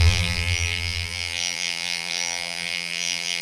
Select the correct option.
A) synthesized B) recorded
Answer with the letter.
A